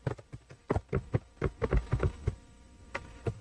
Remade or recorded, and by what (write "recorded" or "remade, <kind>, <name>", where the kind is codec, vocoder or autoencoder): recorded